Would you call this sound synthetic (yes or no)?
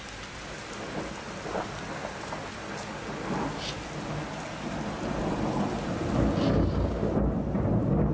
no